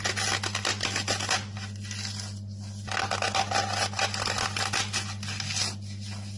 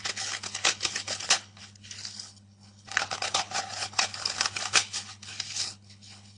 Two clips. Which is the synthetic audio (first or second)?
second